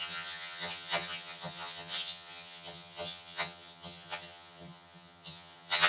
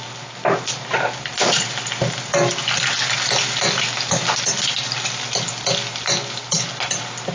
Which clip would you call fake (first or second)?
first